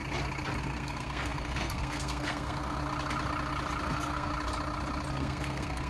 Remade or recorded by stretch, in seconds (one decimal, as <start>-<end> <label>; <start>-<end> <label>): 0.0-0.6 recorded; 0.6-2.8 remade; 2.8-3.8 recorded; 3.8-4.3 remade; 4.3-5.1 recorded; 5.1-5.9 remade

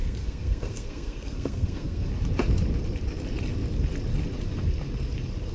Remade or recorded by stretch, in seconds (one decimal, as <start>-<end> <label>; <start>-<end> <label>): 0.0-2.1 remade; 2.1-5.5 recorded

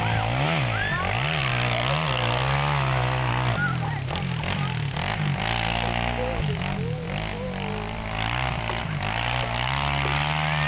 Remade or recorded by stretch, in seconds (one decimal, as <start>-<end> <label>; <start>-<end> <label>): 0.0-10.7 recorded

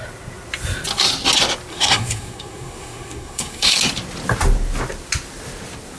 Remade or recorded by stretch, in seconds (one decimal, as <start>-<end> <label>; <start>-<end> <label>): 0.0-1.7 recorded; 1.7-3.8 remade; 3.8-6.0 recorded

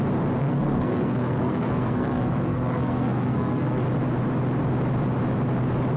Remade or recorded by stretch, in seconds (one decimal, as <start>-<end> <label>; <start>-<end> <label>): 0.0-0.4 recorded; 0.4-3.8 remade; 3.8-6.0 recorded

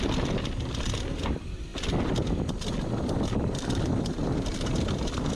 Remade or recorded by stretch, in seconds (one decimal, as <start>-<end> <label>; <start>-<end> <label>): 0.0-5.3 recorded